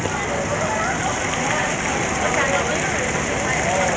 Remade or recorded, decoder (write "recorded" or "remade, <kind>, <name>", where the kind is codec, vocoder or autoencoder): recorded